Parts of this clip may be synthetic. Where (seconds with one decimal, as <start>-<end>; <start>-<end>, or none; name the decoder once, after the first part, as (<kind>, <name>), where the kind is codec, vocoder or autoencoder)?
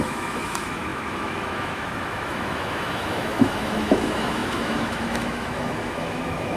0.0-6.6 (autoencoder, DAC-VAE)